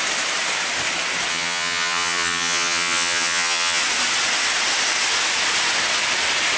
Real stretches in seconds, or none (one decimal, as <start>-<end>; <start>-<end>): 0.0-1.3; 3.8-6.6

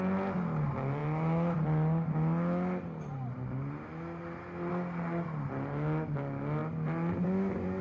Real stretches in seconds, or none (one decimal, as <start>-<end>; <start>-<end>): 0.0-7.8

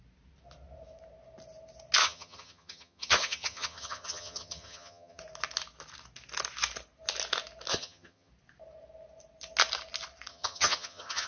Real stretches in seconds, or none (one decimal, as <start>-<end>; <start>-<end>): 0.0-2.0; 5.2-7.7; 8.3-10.3